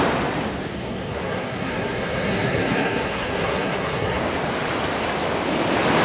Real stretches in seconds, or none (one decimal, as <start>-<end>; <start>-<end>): 0.0-0.7; 4.2-6.0